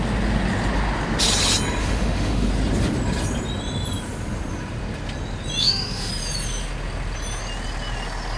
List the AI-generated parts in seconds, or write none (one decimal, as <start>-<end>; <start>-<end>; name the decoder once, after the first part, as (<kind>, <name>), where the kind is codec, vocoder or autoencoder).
1.8-2.5 (autoencoder, DAC-VAE); 5.6-6.1